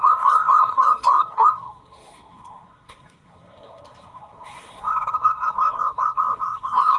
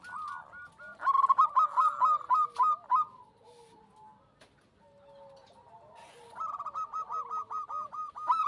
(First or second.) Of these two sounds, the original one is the second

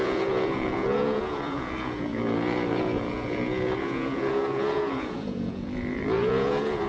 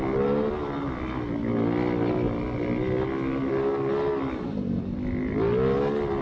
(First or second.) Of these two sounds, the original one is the second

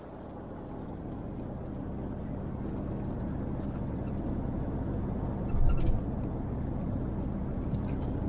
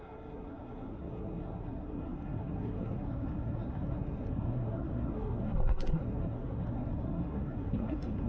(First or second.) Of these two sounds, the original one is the first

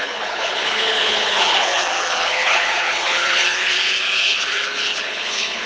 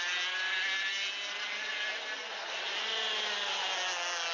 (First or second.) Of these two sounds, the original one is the second